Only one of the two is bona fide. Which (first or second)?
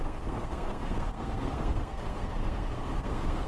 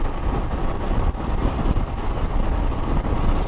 second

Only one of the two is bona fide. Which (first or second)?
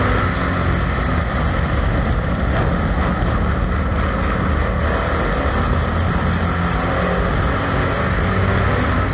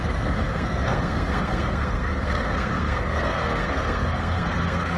first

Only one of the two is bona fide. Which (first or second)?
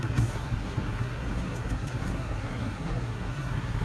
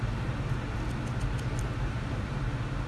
second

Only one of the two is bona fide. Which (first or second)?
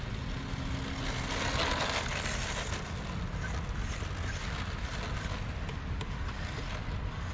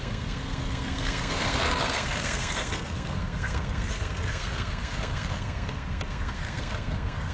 first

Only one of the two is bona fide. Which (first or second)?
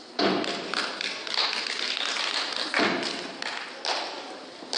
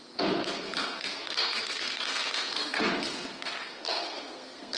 first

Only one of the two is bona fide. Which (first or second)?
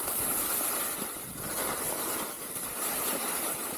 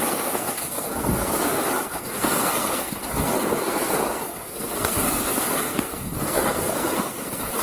first